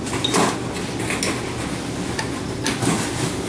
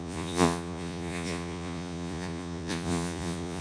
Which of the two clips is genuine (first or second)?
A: first